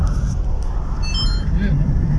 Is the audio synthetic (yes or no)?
no